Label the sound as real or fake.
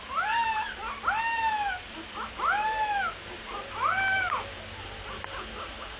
real